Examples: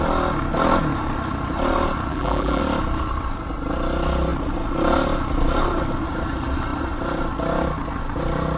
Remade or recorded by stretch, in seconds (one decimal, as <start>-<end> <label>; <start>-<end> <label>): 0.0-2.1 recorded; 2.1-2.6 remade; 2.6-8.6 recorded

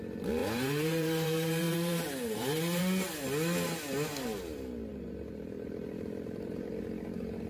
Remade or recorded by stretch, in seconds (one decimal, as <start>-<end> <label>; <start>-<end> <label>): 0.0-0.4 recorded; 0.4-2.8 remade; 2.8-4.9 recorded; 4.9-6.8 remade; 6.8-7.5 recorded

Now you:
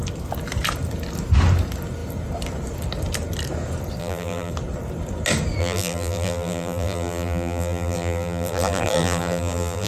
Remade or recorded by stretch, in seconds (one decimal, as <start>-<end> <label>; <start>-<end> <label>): 0.0-4.0 recorded; 4.0-4.5 remade; 4.5-5.6 recorded; 5.6-9.9 remade

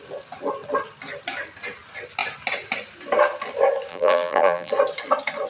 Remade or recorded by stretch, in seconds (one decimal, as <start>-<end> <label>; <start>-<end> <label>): 0.0-3.9 recorded; 3.9-4.7 remade; 4.7-5.5 recorded

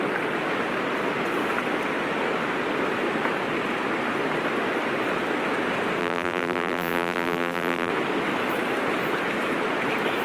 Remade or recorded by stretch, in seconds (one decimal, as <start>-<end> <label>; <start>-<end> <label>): 0.0-6.0 recorded; 6.0-7.9 remade; 7.9-10.2 recorded

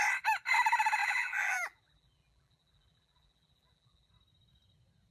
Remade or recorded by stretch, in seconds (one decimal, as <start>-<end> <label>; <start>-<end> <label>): 0.0-1.0 recorded; 1.0-4.1 remade; 4.1-5.1 recorded

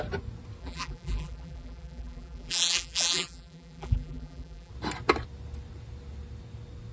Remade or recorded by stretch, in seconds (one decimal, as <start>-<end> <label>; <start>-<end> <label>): 0.0-0.6 recorded; 0.6-4.7 remade; 4.7-6.9 recorded